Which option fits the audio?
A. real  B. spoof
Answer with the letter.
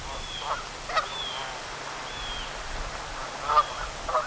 B